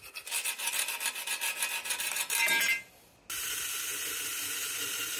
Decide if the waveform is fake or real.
real